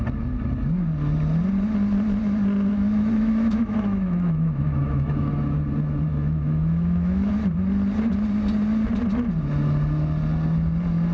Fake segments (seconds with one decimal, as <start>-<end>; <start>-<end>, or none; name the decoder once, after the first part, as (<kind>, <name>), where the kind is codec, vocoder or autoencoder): 2.7-5.3 (autoencoder, DAC-VAE); 6.1-7.3